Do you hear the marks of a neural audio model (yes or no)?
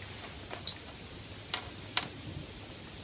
no